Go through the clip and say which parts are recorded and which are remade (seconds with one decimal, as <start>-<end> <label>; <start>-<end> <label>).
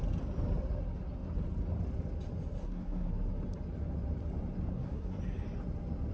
0.0-2.6 recorded; 2.6-3.1 remade; 3.1-4.7 recorded; 4.7-5.2 remade; 5.2-6.1 recorded